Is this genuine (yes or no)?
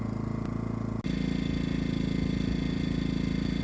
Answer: yes